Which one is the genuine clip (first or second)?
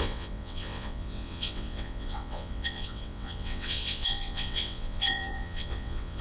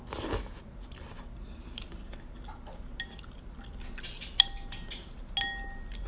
second